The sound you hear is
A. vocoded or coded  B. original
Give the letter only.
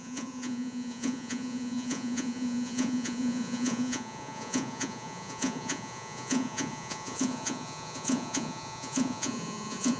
A